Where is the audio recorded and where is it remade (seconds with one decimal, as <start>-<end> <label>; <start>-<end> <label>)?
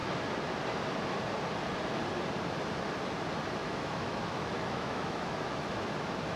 0.0-3.6 recorded; 3.6-5.9 remade; 5.9-6.4 recorded